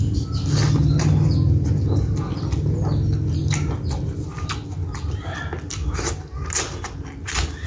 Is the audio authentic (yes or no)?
yes